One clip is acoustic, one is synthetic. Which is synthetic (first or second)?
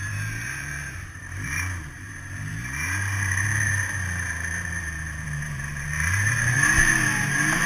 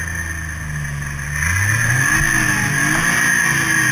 first